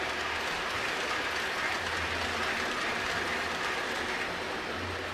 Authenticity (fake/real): real